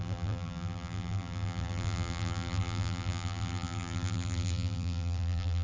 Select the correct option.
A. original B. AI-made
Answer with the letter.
B